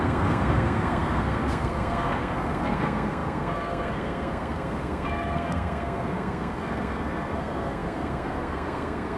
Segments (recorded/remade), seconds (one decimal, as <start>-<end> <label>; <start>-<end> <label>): 0.0-9.2 remade